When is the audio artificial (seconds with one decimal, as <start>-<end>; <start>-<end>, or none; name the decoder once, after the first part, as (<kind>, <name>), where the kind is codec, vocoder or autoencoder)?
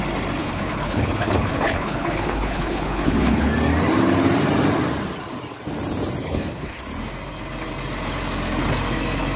0.4-3.5 (codec, HILCodec); 6.2-6.8